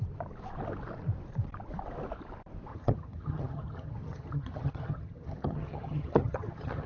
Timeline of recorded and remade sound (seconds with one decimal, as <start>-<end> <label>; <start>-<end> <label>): 0.0-2.7 recorded; 2.7-6.9 remade